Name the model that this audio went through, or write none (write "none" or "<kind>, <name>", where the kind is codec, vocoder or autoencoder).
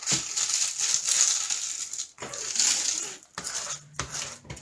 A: none